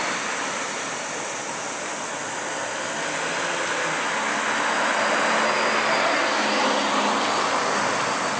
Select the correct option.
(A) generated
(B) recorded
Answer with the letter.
B